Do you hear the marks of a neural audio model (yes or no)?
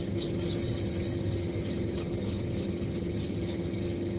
yes